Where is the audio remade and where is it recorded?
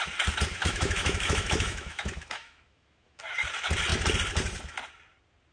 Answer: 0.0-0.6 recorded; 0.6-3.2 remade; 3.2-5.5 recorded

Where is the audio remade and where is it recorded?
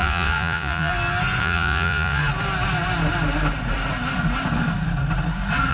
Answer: 0.0-0.9 remade; 0.9-1.4 recorded; 1.4-2.2 remade; 2.2-5.7 recorded